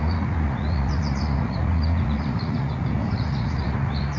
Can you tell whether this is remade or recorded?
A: remade